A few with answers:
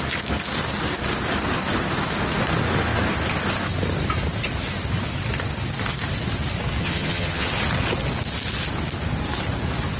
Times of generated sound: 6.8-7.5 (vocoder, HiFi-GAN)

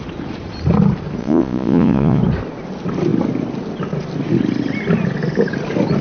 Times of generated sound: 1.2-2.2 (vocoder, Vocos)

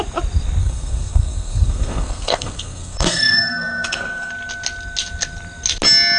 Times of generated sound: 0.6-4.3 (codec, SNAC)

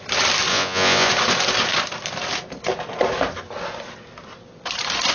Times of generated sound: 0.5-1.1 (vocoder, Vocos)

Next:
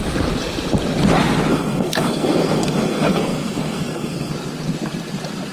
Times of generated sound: 1.5-4.3 (codec, SNAC)

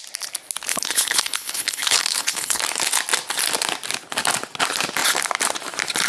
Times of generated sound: 0.7-2.6 (codec, HILCodec)

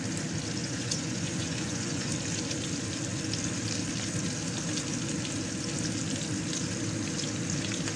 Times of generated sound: 0.6-2.1 (vocoder, Vocos)